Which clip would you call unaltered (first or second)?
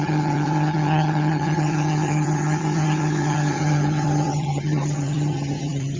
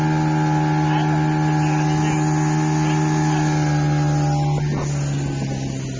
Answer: second